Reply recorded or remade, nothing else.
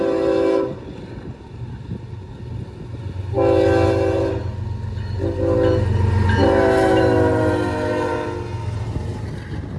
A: recorded